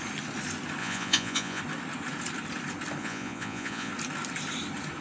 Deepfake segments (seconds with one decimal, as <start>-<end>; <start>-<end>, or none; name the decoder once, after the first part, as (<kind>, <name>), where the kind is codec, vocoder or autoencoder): 0.8-1.6 (vocoder, Vocos); 3.0-3.9